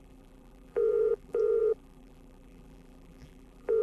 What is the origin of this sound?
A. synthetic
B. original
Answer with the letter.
A